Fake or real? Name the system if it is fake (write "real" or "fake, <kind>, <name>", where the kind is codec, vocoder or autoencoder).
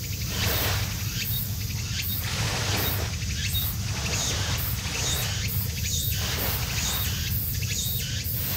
real